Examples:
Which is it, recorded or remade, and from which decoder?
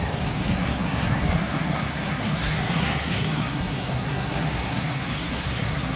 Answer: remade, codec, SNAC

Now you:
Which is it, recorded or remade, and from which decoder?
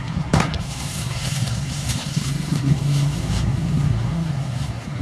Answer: remade, codec, SNAC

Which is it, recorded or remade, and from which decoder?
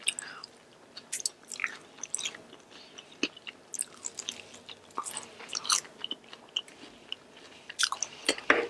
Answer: recorded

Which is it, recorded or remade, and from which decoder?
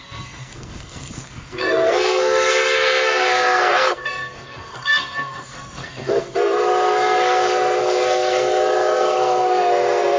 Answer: remade, codec, SNAC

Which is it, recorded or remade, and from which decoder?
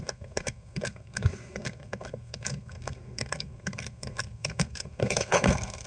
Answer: remade, codec, SNAC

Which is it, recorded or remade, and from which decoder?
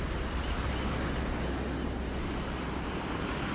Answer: recorded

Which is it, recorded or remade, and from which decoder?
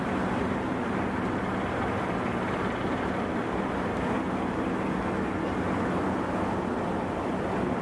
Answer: recorded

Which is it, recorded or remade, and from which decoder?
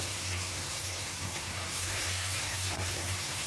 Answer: remade, codec, SNAC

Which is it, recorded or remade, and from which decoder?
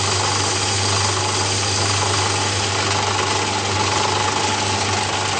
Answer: recorded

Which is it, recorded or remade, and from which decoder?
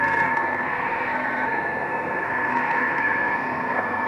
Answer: remade, codec, SNAC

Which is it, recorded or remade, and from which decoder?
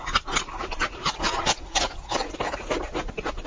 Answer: recorded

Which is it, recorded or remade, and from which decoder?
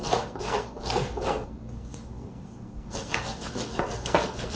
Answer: remade, codec, SNAC